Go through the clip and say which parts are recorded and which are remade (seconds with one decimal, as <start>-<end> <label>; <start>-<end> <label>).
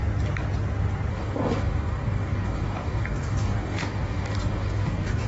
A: 0.0-1.1 recorded; 1.1-5.3 remade